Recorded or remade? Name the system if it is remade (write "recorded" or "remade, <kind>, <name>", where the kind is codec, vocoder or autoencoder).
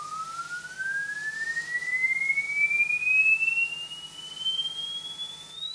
recorded